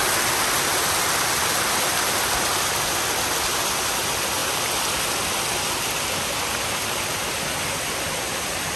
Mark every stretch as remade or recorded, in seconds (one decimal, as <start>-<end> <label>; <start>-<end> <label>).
0.0-8.8 recorded